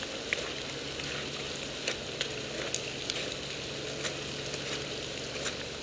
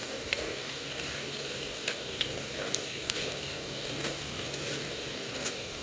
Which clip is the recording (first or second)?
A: first